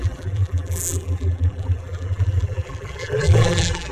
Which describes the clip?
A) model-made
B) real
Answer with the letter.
A